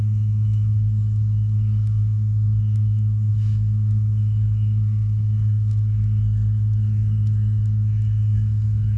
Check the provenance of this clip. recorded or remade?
remade